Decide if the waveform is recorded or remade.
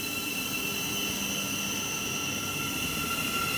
recorded